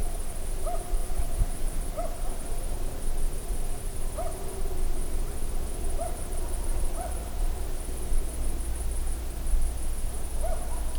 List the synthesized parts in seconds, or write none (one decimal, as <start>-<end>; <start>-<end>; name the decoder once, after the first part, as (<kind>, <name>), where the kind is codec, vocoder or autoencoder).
1.0-1.8 (vocoder, BigVGAN v2); 6.0-7.8